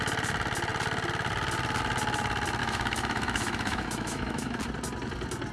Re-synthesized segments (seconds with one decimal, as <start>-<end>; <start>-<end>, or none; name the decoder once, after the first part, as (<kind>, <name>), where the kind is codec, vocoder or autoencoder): 2.6-4.6 (autoencoder, DAC-VAE)